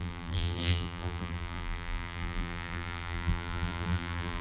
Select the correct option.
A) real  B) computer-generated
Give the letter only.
B